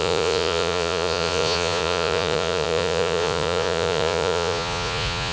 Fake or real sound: fake